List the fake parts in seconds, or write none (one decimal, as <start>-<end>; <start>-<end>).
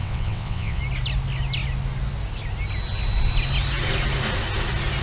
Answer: 0.0-0.8